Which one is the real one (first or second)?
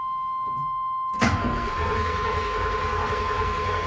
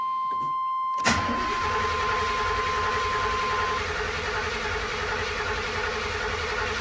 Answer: second